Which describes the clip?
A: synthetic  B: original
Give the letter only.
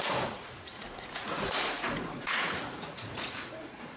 A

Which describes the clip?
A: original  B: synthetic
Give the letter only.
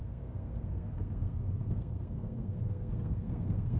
B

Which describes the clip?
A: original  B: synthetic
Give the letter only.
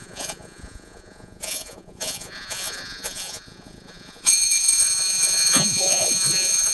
B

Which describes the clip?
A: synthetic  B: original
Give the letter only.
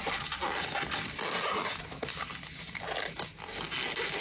B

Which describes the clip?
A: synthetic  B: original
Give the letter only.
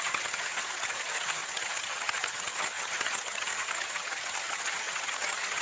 A